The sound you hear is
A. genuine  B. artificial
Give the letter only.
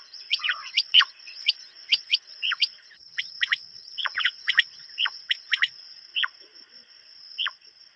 B